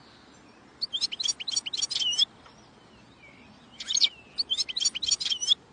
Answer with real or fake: real